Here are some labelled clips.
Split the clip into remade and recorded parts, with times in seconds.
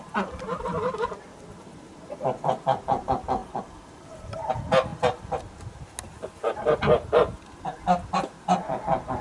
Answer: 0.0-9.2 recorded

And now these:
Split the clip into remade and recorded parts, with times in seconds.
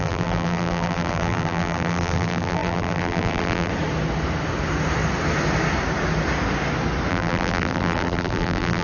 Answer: 0.0-3.7 remade; 3.7-7.1 recorded; 7.1-8.8 remade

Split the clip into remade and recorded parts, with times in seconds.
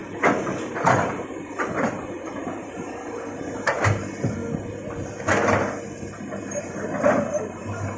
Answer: 0.0-0.6 recorded; 0.6-4.4 remade; 4.4-6.4 recorded; 6.4-8.0 remade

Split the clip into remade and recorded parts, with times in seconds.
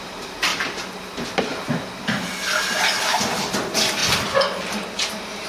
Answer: 0.0-0.5 remade; 0.5-3.0 recorded; 3.0-4.0 remade; 4.0-5.1 recorded; 5.1-5.5 remade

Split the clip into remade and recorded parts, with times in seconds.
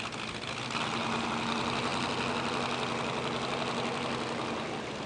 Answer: 0.0-1.9 remade; 1.9-5.1 recorded